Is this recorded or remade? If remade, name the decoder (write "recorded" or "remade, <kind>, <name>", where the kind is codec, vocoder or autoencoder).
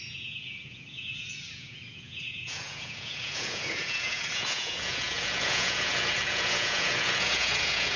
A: remade, vocoder, Vocos